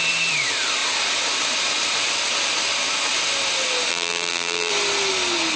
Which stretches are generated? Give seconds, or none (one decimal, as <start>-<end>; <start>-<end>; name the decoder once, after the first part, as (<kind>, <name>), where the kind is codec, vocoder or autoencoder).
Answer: 3.9-4.7 (vocoder, BigVGAN v2)